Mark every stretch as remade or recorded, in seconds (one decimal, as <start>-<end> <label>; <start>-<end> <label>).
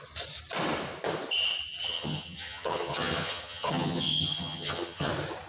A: 0.0-1.8 recorded; 1.8-5.1 remade; 5.1-5.5 recorded